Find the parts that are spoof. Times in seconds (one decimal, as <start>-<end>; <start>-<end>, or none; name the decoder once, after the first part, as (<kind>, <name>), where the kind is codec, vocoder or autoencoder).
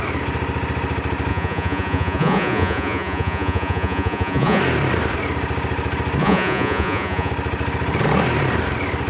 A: 1.3-4.6 (vocoder, Vocos); 6.2-7.3